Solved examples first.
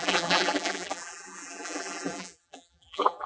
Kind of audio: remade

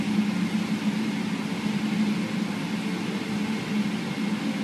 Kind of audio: recorded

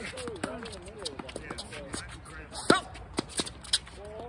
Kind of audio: recorded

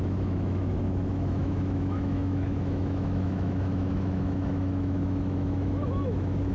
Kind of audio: remade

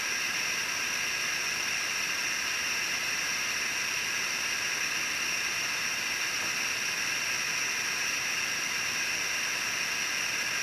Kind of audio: recorded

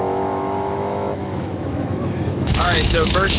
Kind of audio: remade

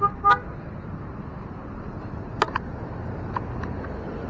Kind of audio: recorded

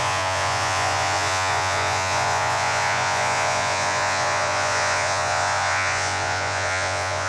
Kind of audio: remade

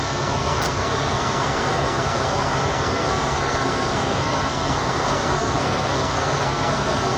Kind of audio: remade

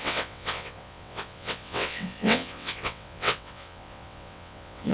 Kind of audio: remade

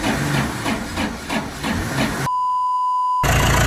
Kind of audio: recorded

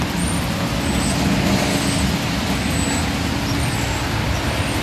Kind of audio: recorded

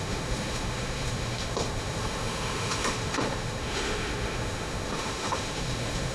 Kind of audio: remade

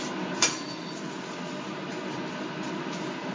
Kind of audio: recorded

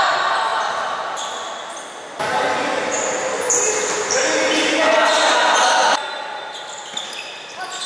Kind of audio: recorded